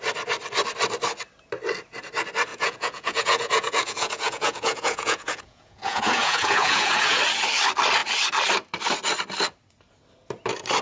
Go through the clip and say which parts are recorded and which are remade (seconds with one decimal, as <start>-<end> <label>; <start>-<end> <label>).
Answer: 0.0-2.5 recorded; 2.5-7.2 remade; 7.2-10.8 recorded